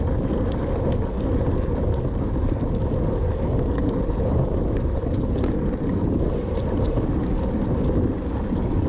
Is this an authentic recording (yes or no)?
yes